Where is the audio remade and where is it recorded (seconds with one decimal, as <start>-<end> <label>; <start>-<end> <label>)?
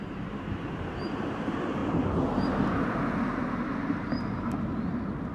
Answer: 0.0-1.8 remade; 1.8-3.6 recorded; 3.6-5.3 remade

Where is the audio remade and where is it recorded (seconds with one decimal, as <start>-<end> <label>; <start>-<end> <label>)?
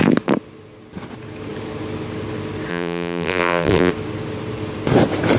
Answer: 0.0-2.7 recorded; 2.7-3.9 remade; 3.9-5.4 recorded